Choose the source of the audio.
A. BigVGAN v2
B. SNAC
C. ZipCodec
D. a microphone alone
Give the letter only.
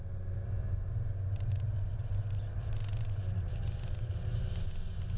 D